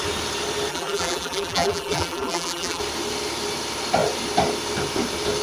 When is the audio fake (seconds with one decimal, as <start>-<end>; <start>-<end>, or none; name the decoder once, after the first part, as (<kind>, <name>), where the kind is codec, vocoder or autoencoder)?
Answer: 0.7-2.8 (vocoder, BigVGAN v2)